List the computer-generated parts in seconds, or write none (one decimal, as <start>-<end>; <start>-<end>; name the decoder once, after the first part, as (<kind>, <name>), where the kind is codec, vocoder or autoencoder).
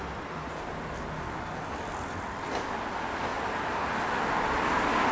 none